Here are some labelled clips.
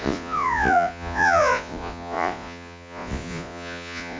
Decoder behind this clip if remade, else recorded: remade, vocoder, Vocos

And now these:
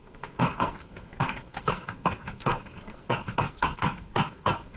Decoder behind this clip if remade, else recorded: remade, codec, SNAC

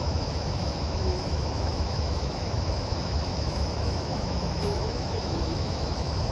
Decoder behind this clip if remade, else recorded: remade, autoencoder, DAC-VAE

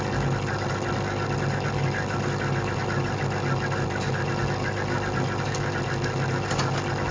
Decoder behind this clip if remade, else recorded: recorded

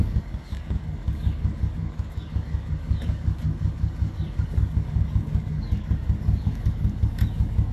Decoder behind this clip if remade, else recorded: remade, codec, DAC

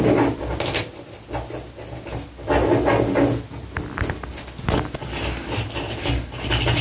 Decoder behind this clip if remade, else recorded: recorded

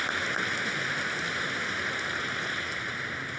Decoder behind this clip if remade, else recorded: recorded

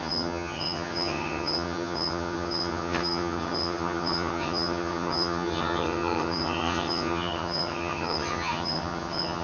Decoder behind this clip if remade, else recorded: remade, vocoder, HiFi-GAN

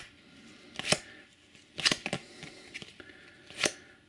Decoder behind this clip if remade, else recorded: recorded